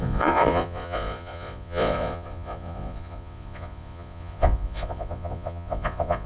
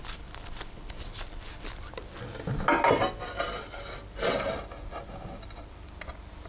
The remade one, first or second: first